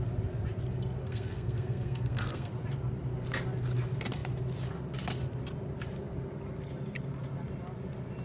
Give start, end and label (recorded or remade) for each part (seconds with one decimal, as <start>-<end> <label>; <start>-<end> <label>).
0.0-1.0 recorded; 1.0-2.5 remade; 2.5-8.2 recorded

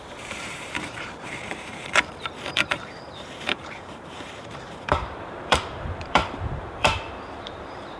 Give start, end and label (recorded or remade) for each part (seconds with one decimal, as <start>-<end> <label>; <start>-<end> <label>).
0.0-8.0 remade